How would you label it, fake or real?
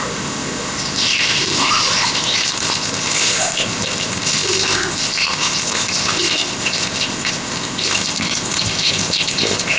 fake